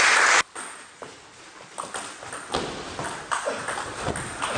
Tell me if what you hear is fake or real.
real